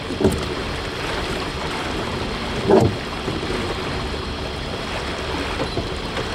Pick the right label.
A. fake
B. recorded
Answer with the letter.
B